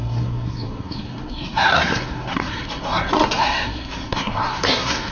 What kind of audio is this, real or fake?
fake